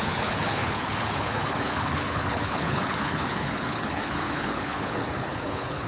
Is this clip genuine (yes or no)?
no